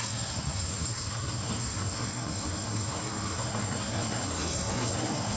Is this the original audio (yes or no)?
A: no